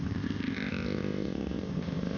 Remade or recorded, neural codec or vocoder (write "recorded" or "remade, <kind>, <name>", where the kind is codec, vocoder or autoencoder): remade, codec, ZipCodec